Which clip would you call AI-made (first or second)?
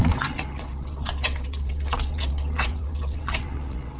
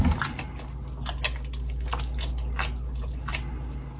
first